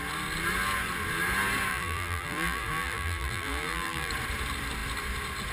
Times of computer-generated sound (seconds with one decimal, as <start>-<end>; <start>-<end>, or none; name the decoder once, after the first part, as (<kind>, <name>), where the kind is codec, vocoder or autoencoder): 1.7-4.1 (vocoder, BigVGAN v2)